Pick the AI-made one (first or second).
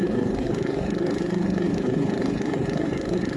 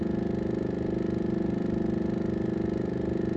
first